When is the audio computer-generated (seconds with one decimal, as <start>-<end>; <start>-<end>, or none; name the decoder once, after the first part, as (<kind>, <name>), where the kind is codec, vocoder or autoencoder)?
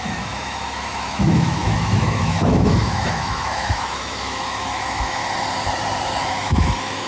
0.0-5.2 (autoencoder, DAC-VAE); 6.3-7.1